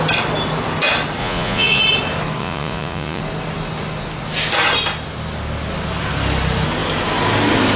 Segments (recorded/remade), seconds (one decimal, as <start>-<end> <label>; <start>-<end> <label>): 0.0-1.2 recorded; 1.2-1.8 remade; 1.8-2.4 recorded; 2.4-3.2 remade; 3.2-7.8 recorded